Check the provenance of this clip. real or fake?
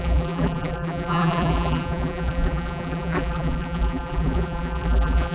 fake